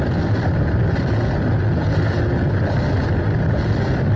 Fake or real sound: real